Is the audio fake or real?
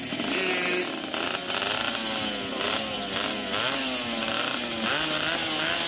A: real